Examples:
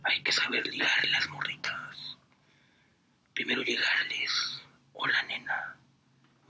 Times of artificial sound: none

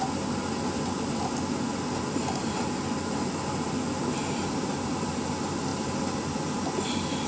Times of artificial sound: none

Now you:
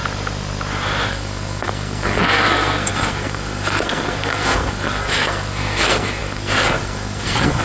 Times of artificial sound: 1.1-7.6 (codec, SNAC)